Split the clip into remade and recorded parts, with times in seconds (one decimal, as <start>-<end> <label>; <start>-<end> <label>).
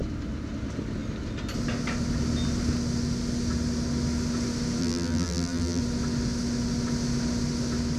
0.0-4.8 recorded; 4.8-5.8 remade; 5.8-8.0 recorded